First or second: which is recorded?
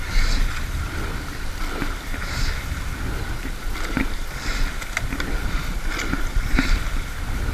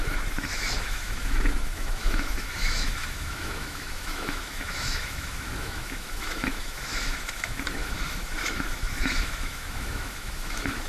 first